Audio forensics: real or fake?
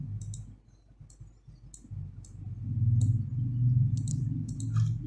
real